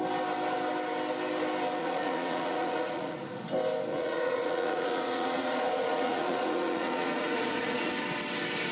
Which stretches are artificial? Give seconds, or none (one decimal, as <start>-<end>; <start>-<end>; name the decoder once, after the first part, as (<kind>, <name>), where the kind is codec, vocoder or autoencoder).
1.8-3.4 (vocoder, Vocos); 3.9-7.9